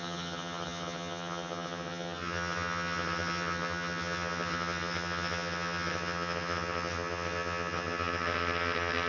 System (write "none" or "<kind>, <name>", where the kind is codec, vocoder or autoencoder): vocoder, HiFi-GAN